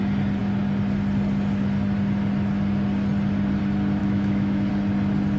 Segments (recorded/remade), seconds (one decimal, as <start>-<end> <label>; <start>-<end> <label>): 0.0-4.0 recorded; 4.0-4.7 remade; 4.7-5.4 recorded